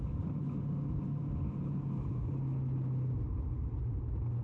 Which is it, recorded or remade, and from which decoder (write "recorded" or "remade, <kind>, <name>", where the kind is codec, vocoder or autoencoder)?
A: recorded